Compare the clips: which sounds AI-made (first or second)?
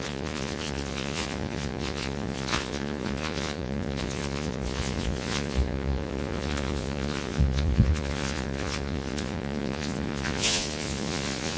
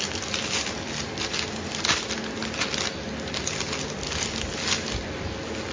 first